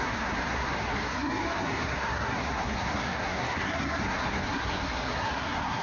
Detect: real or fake fake